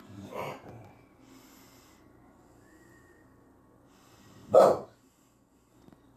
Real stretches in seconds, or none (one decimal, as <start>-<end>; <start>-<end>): 0.0-6.2